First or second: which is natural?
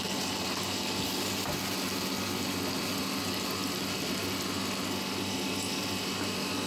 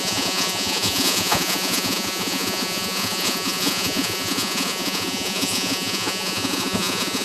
first